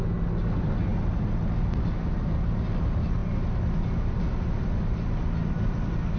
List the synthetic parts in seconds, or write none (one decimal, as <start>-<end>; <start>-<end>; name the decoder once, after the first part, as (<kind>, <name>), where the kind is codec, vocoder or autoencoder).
none